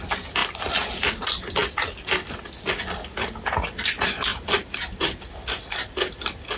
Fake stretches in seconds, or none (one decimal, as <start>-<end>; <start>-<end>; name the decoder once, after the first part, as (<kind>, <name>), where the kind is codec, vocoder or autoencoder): 0.4-1.2 (vocoder, BigVGAN v2); 1.6-2.7